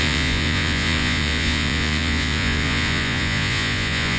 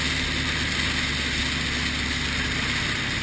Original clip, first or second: second